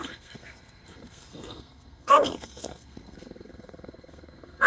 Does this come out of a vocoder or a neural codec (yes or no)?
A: yes